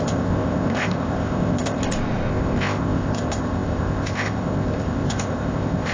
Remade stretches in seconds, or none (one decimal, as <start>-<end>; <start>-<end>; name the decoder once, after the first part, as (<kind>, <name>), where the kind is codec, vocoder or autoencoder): 0.0-1.8 (codec, ZipCodec); 2.3-5.9